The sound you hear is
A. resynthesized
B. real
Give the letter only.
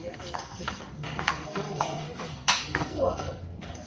A